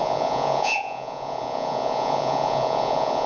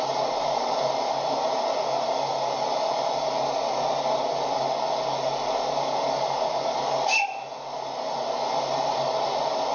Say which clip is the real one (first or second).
second